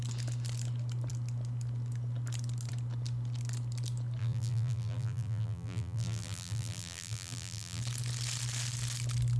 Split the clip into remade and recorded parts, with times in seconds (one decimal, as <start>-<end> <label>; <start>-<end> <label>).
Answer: 0.0-4.2 recorded; 4.2-7.8 remade; 7.8-9.4 recorded